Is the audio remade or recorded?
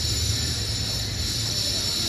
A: recorded